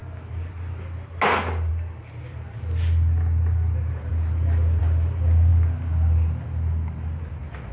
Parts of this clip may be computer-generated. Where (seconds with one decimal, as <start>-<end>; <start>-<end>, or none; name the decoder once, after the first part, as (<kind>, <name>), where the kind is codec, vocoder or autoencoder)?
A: none

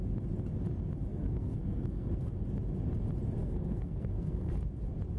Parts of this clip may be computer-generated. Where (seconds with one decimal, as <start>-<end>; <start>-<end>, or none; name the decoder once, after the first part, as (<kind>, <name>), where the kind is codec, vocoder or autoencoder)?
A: 1.1-2.3 (codec, SNAC); 3.4-4.5

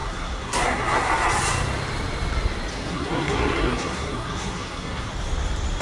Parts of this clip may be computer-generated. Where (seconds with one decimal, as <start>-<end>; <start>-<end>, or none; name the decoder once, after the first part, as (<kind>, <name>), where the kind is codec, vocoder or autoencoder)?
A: 0.0-1.1 (codec, SNAC); 2.7-5.1